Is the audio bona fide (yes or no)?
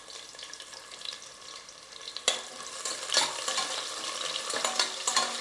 yes